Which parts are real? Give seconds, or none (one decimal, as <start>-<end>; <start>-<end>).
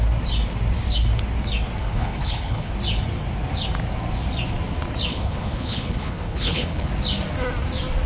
0.0-1.8; 2.7-5.1; 6.9-8.1